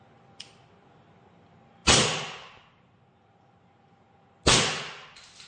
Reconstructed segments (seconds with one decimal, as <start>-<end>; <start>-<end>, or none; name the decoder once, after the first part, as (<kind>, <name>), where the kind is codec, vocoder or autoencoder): none